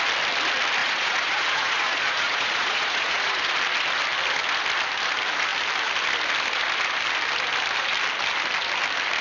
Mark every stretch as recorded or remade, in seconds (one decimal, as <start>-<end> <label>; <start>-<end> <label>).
0.0-0.8 recorded; 0.8-3.4 remade; 3.4-9.2 recorded